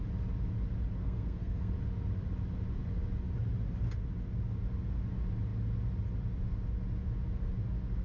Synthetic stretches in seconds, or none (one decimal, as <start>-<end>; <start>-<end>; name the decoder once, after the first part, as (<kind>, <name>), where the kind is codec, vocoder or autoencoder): 1.0-1.7 (codec, SNAC)